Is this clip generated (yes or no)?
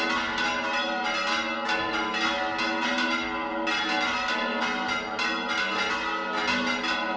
no